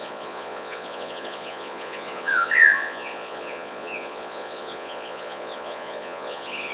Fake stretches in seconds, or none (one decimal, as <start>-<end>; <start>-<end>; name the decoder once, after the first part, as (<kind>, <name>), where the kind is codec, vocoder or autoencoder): 0.0-6.7 (vocoder, Vocos)